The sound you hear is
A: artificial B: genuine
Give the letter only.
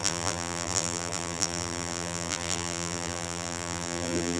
A